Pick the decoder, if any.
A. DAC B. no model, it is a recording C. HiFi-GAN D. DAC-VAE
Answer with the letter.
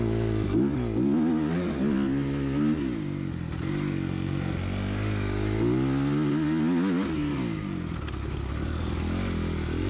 B